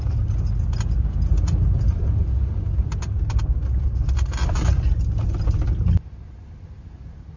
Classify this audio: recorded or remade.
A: recorded